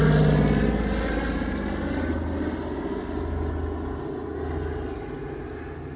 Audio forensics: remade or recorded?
recorded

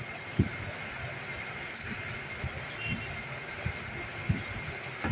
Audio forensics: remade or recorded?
remade